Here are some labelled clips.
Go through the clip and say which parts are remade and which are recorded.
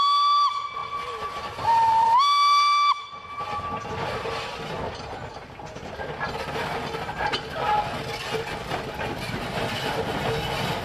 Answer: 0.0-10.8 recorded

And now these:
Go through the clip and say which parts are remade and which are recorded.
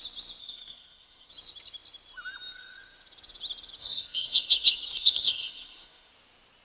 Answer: 0.0-0.4 recorded; 0.4-1.3 remade; 1.3-3.8 recorded; 3.8-6.1 remade; 6.1-6.6 recorded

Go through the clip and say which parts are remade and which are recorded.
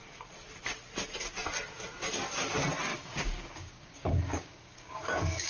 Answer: 0.0-2.9 recorded; 2.9-5.5 remade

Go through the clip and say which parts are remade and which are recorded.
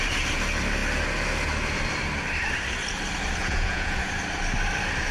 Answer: 0.0-3.4 recorded; 3.4-4.1 remade; 4.1-5.1 recorded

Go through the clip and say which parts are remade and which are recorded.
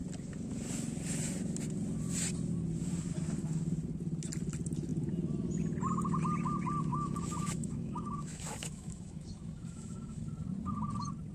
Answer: 0.0-6.9 recorded; 6.9-10.2 remade; 10.2-11.3 recorded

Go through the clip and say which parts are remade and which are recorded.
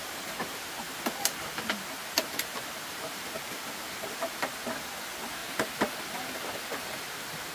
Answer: 0.0-4.5 remade; 4.5-5.4 recorded; 5.4-6.0 remade; 6.0-7.5 recorded